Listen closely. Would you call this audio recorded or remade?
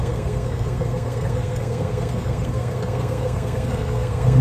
remade